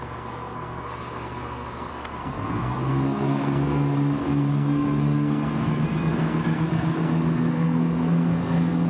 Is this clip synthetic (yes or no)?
yes